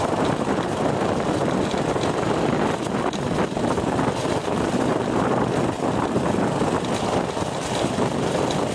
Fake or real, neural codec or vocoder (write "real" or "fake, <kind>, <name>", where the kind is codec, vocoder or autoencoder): real